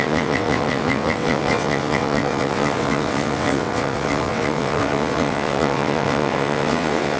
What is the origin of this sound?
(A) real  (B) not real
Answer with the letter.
B